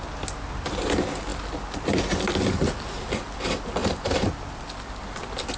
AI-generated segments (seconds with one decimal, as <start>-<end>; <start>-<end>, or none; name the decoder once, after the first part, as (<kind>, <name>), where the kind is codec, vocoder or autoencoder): none